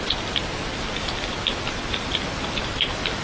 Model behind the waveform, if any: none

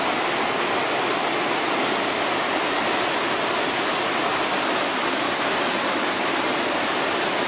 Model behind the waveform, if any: none